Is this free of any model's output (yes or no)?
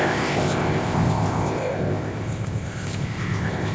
no